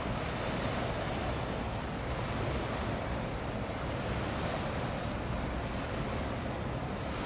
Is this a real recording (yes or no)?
yes